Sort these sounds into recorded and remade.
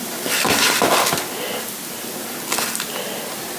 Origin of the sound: recorded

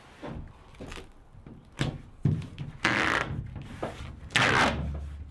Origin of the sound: recorded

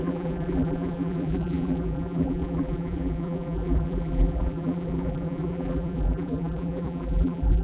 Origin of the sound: remade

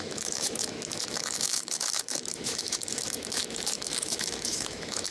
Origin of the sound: remade